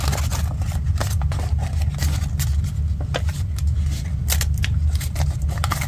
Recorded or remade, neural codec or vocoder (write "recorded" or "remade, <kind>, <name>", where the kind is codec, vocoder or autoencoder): recorded